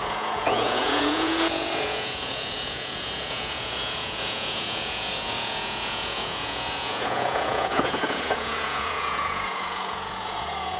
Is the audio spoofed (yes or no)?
yes